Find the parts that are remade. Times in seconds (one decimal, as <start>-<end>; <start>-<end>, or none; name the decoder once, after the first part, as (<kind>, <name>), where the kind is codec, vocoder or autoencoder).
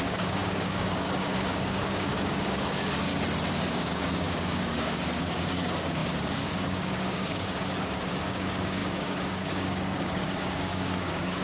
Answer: 0.0-3.1 (codec, DAC); 3.7-11.4